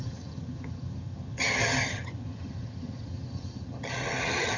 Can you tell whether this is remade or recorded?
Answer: remade